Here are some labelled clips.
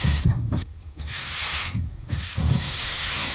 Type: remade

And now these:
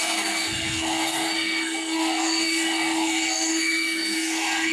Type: remade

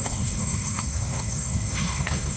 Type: remade